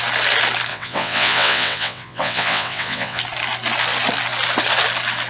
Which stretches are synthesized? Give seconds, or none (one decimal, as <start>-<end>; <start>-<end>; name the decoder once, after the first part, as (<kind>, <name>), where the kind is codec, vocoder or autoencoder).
0.7-3.2 (vocoder, WaveNeXt)

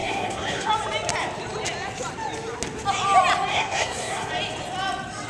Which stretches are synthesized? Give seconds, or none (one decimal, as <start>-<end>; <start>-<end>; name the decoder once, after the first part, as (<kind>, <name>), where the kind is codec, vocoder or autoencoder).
0.0-0.7 (codec, SNAC); 3.5-4.3

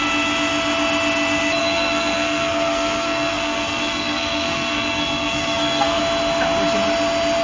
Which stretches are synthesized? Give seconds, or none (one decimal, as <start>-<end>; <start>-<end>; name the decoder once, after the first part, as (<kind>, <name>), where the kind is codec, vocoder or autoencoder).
1.6-6.0 (codec, SNAC)